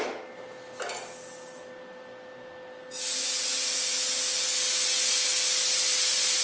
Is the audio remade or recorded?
recorded